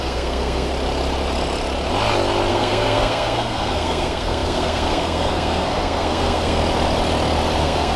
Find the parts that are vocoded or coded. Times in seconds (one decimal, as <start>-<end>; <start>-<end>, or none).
0.0-0.7; 2.5-6.6; 7.6-8.0